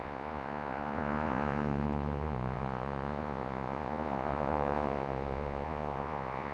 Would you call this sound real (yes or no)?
no